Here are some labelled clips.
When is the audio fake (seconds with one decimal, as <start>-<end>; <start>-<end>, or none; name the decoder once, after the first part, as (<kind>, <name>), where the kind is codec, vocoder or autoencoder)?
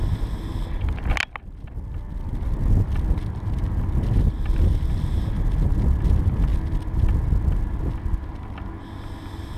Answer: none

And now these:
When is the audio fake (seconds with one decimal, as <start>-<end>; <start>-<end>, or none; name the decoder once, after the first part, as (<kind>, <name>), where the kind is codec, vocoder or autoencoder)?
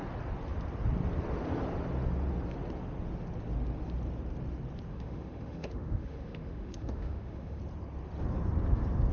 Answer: 4.9-7.6 (autoencoder, DAC-VAE)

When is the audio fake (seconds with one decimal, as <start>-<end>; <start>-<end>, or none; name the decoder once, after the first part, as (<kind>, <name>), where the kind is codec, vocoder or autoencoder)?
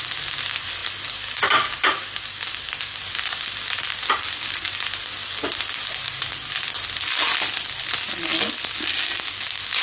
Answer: none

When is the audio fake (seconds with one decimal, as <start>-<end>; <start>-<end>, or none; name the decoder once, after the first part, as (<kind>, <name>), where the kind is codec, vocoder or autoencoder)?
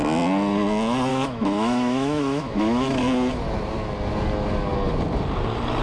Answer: 1.1-3.0 (autoencoder, DAC-VAE)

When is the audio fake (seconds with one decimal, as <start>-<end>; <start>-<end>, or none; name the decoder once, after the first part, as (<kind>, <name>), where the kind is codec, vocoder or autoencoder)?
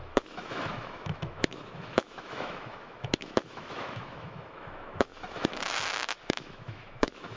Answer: 0.0-7.4 (autoencoder, DAC-VAE)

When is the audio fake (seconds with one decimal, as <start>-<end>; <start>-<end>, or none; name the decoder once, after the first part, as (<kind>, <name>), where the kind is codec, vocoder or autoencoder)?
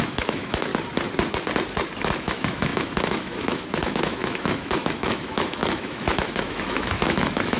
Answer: 0.0-0.7 (autoencoder, DAC-VAE); 2.2-7.6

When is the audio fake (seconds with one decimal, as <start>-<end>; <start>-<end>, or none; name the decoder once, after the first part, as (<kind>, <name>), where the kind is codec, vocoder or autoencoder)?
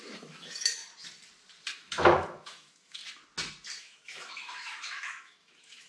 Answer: 0.0-0.8 (autoencoder, DAC-VAE); 1.7-3.0; 3.8-5.9